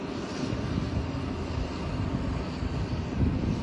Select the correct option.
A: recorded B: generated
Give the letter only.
A